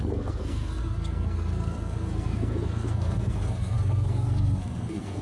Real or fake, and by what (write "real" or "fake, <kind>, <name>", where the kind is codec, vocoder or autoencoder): fake, codec, SNAC